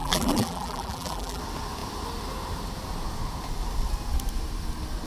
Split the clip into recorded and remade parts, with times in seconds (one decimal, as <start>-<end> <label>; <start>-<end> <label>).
0.0-1.4 remade; 1.4-5.1 recorded